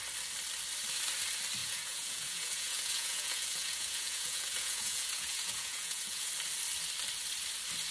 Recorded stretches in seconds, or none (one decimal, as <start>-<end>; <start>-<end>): 0.0-1.6; 6.3-7.9